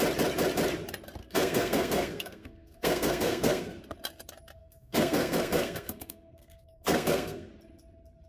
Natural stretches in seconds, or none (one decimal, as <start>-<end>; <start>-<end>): 0.0-1.2; 3.8-4.6; 7.5-8.3